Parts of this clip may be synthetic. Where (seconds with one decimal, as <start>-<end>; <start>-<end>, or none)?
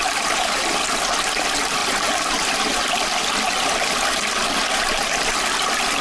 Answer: none